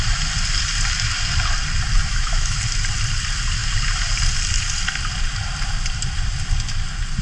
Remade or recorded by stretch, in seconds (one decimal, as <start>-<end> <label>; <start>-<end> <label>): 0.0-2.0 recorded; 2.0-2.6 remade; 2.6-7.2 recorded